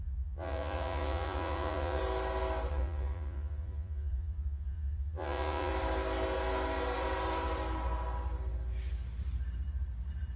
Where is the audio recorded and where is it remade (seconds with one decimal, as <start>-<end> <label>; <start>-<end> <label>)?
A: 0.0-2.0 remade; 2.0-2.7 recorded; 2.7-5.7 remade; 5.7-10.4 recorded